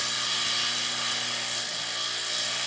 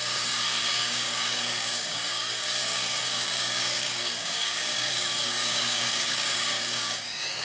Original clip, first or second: first